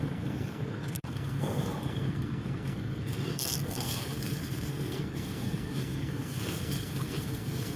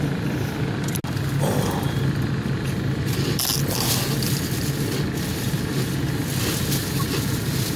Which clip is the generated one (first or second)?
first